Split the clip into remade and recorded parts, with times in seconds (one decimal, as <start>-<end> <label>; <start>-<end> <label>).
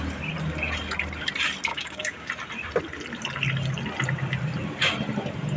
0.0-1.7 recorded; 1.7-2.3 remade; 2.3-5.6 recorded